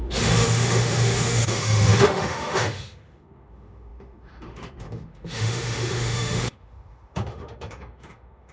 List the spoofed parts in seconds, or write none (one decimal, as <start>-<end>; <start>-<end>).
0.0-8.5